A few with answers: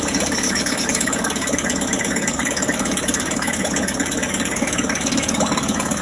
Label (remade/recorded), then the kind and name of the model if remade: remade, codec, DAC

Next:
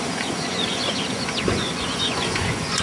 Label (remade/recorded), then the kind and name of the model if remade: remade, vocoder, Vocos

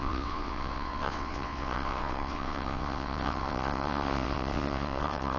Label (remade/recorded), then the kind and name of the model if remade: remade, vocoder, WaveNeXt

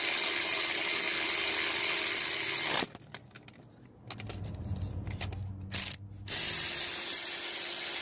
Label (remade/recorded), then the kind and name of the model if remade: recorded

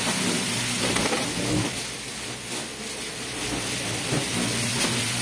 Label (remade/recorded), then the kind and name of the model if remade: recorded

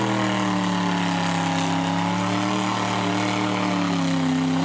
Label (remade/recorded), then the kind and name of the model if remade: recorded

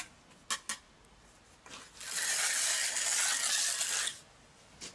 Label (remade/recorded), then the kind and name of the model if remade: recorded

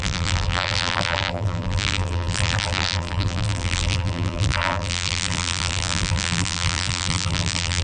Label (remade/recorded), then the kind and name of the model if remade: remade, vocoder, BigVGAN v2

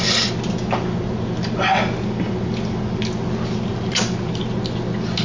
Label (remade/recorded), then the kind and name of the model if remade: recorded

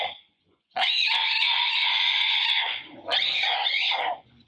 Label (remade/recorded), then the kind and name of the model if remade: remade, vocoder, Vocos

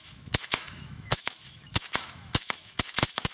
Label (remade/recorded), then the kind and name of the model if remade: remade, autoencoder, DAC-VAE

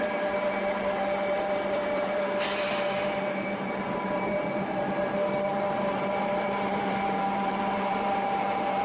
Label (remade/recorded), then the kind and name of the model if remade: remade, vocoder, BigVGAN v2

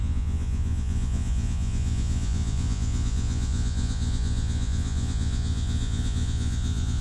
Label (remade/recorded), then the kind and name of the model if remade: remade, vocoder, Vocos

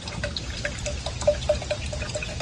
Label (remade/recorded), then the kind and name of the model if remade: recorded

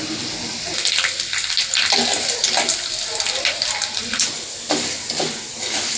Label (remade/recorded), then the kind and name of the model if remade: recorded